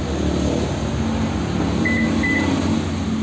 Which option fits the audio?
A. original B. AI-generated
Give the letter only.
A